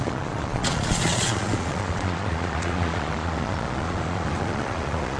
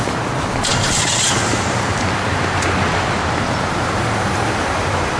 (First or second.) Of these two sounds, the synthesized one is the first